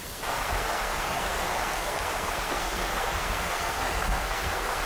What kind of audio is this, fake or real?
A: fake